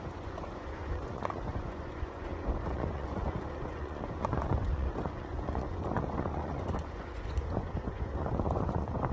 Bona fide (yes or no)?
no